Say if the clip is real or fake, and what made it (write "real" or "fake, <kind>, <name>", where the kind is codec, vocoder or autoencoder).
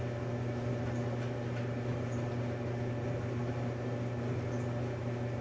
real